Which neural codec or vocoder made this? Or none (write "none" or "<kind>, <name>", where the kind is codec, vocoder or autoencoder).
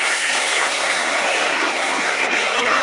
codec, SNAC